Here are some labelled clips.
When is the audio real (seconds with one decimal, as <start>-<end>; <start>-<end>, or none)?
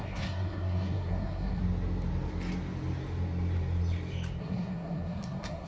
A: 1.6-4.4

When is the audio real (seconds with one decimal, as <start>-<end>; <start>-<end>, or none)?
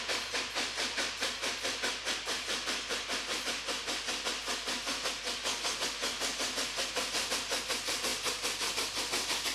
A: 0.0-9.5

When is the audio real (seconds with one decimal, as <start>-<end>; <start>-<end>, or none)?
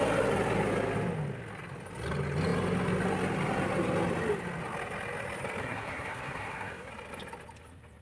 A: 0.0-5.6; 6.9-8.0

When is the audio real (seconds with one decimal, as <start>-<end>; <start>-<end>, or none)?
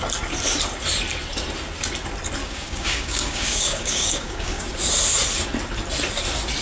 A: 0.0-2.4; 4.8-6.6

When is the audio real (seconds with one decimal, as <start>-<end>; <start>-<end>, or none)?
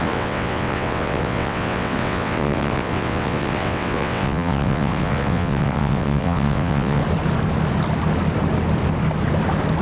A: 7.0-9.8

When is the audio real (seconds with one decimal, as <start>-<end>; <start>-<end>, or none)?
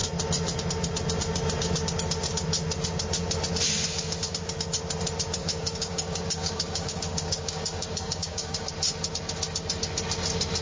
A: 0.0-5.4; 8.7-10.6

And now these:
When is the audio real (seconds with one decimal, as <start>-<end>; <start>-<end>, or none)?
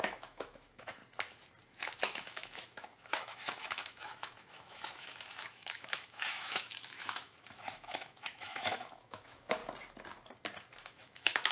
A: 1.0-1.7; 9.6-10.8